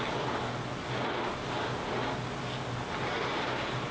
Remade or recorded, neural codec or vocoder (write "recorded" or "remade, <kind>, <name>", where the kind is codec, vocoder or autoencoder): recorded